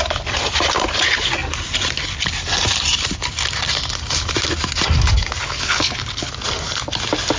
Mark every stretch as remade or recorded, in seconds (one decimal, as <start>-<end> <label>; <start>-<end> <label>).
0.0-5.4 recorded; 5.4-6.3 remade; 6.3-7.4 recorded